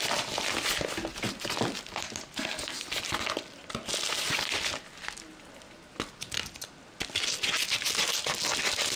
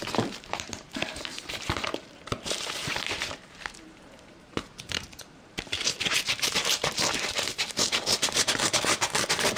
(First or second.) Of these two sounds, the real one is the first